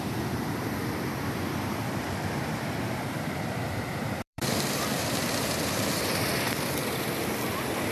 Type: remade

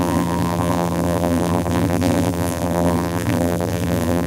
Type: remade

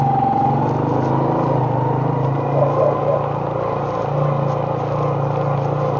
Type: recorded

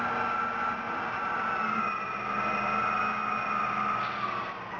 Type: recorded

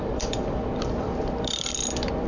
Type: remade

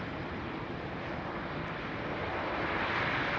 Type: recorded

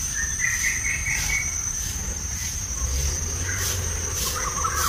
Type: remade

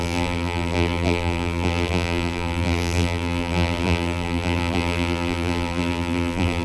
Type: remade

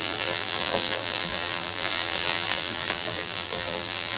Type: remade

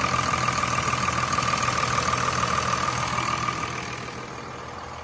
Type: recorded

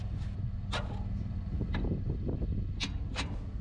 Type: recorded